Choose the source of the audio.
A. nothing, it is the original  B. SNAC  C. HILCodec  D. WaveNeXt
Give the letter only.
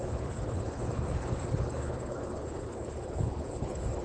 C